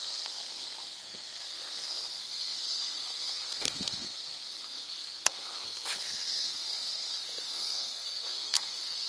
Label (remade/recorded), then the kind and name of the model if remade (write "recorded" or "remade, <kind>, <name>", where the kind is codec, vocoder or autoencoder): remade, codec, SNAC